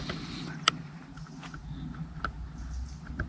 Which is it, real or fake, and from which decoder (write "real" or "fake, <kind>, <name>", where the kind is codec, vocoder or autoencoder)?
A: real